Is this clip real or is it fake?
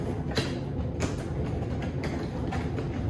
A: real